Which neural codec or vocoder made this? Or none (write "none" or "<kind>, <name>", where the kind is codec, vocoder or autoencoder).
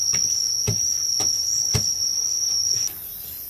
none